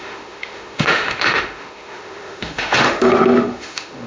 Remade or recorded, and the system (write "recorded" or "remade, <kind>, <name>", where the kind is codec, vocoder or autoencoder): remade, autoencoder, DAC-VAE